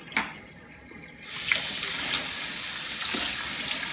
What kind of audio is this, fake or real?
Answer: real